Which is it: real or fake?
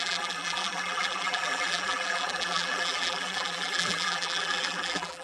fake